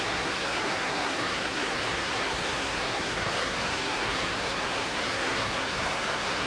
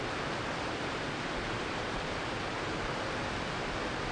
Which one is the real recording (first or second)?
second